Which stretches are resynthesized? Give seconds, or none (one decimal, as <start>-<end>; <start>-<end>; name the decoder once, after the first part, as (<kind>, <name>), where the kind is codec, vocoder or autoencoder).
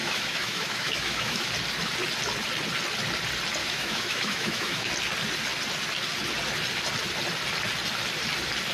0.0-1.5 (autoencoder, DAC-VAE); 3.6-4.9